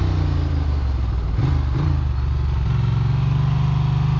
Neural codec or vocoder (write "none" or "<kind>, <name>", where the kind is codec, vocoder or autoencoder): none